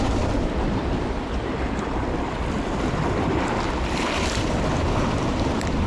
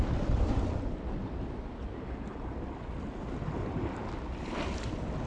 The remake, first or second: first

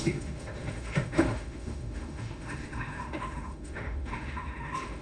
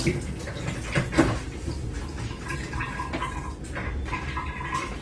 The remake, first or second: first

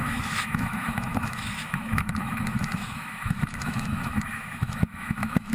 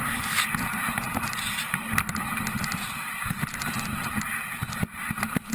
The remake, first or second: first